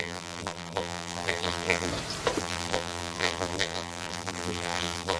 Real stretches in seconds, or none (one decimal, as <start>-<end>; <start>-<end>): 1.9-2.4